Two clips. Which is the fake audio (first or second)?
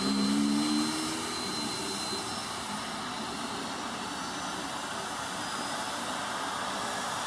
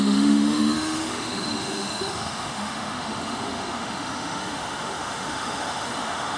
second